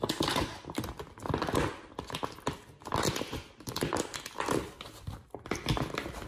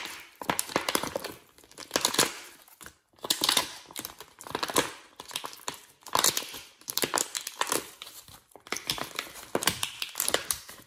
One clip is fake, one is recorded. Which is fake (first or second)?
second